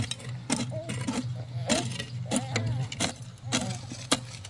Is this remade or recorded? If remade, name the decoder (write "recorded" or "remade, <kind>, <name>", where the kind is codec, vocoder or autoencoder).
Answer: recorded